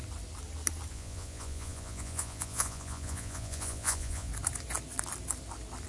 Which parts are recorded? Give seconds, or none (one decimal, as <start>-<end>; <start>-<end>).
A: 0.0-0.9; 4.3-5.9